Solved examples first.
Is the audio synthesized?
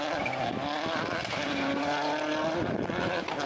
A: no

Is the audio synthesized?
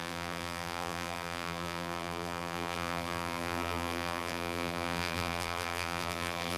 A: yes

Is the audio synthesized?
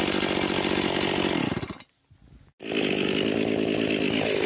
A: no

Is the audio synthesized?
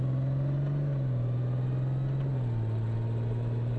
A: no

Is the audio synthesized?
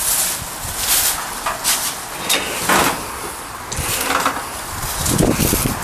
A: no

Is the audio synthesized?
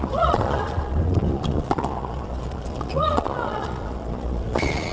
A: yes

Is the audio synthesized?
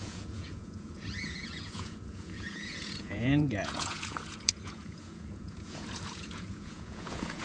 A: yes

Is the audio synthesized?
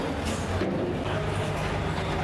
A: no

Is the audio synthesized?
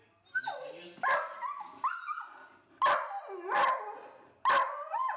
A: no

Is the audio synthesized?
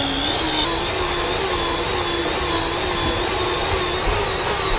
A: no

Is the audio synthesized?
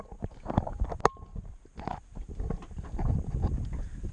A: no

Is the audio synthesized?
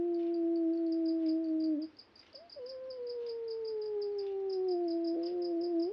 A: no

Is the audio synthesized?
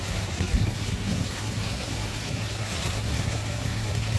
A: yes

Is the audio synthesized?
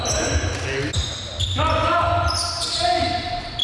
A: no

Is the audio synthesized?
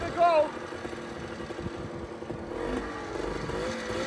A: no